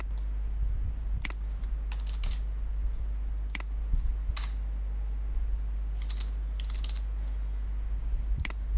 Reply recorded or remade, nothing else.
recorded